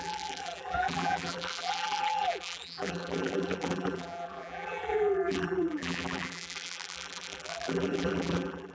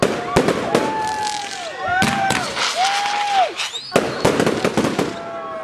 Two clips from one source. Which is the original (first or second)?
second